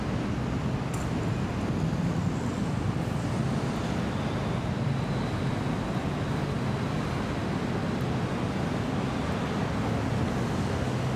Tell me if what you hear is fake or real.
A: real